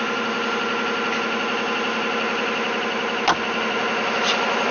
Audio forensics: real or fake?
real